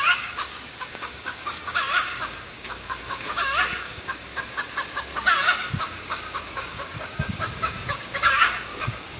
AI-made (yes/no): yes